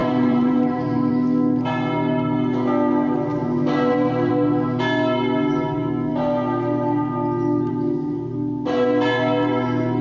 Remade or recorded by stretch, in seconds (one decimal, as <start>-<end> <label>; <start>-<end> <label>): 0.0-1.1 remade; 1.1-3.4 recorded; 3.4-4.3 remade; 4.3-10.0 recorded